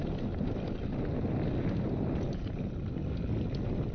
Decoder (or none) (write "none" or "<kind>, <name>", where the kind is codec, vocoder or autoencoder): none